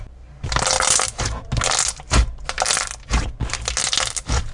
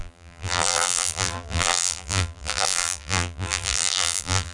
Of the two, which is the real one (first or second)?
first